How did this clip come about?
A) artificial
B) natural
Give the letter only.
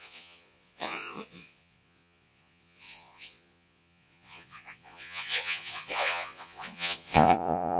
A